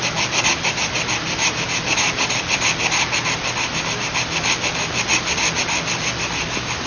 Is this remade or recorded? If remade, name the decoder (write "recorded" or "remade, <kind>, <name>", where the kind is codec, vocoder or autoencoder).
recorded